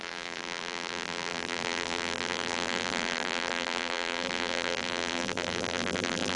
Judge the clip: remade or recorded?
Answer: remade